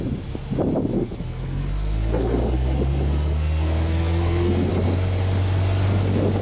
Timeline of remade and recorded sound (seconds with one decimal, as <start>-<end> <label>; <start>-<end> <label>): 0.0-0.9 recorded; 0.9-4.7 remade; 4.7-6.4 recorded

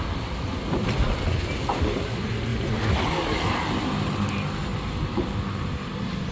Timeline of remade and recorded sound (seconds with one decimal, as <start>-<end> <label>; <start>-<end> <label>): 0.0-6.3 recorded

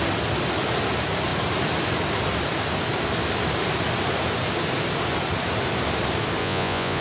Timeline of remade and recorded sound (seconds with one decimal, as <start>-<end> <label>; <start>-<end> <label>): 0.0-6.4 recorded; 6.4-7.0 remade

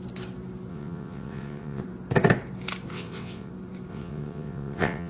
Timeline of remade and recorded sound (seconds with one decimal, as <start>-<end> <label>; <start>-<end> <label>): 0.0-0.7 recorded; 0.7-1.8 remade; 1.8-2.9 recorded; 2.9-3.5 remade; 3.5-3.9 recorded; 3.9-5.1 remade

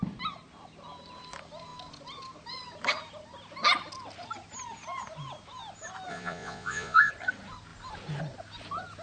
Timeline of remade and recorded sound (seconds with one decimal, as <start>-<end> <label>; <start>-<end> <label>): 0.0-6.1 recorded; 6.1-7.1 remade; 7.1-9.0 recorded